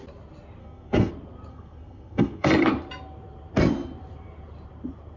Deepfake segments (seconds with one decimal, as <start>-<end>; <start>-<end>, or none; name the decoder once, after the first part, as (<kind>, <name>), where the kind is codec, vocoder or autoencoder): 0.6-1.1 (codec, SNAC); 1.5-2.5